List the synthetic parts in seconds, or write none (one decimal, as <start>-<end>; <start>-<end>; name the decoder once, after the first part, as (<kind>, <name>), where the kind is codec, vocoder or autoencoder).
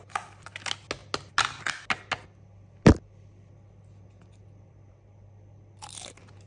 none